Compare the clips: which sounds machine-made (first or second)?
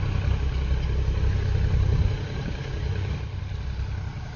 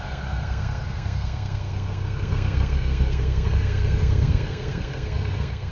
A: second